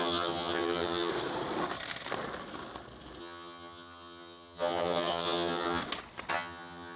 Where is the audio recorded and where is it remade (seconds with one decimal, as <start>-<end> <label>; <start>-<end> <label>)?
0.0-1.1 remade; 1.1-3.2 recorded; 3.2-5.8 remade; 5.8-6.3 recorded; 6.3-7.0 remade